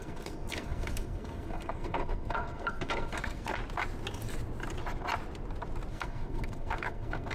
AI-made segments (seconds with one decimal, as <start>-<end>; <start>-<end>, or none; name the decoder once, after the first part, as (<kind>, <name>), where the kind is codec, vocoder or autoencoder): 0.0-3.6 (codec, SNAC); 5.9-7.3